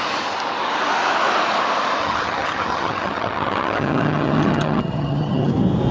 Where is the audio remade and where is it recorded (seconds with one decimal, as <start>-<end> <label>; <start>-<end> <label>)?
0.0-2.0 recorded; 2.0-5.5 remade; 5.5-5.9 recorded